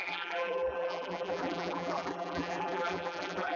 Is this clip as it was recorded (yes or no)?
no